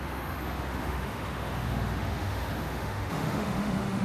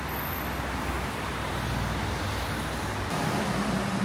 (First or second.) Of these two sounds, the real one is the second